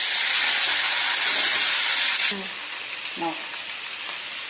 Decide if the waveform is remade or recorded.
recorded